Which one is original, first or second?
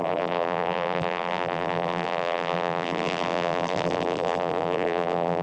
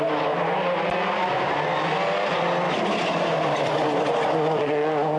second